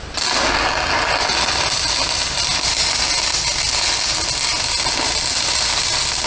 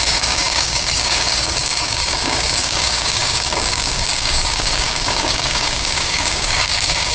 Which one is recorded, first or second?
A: first